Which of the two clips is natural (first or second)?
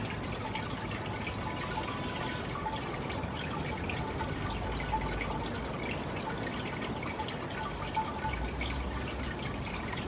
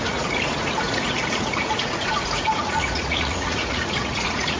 first